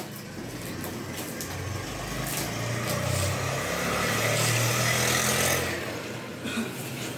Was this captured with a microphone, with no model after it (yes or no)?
yes